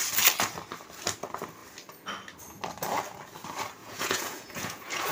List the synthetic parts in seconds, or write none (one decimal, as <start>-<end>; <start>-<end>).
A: 3.8-5.1